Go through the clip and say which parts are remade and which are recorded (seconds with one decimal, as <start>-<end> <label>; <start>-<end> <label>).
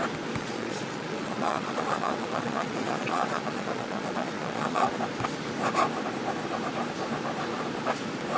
0.0-0.4 recorded; 0.4-5.0 remade; 5.0-8.4 recorded